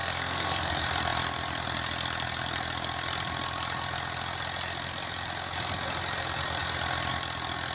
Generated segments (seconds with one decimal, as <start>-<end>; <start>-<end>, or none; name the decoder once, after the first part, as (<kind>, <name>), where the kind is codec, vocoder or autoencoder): 0.0-0.7 (codec, SNAC)